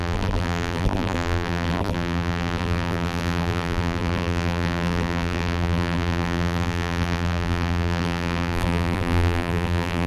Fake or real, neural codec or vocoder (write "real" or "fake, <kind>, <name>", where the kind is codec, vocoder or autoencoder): fake, vocoder, BigVGAN v2